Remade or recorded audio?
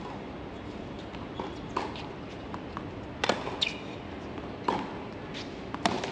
recorded